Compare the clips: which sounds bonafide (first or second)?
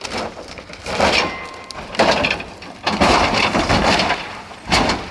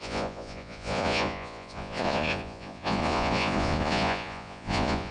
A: first